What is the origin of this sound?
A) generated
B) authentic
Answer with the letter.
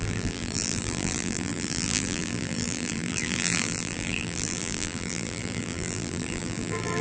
A